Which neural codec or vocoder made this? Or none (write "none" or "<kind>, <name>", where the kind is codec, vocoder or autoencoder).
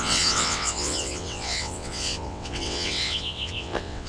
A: vocoder, WaveNeXt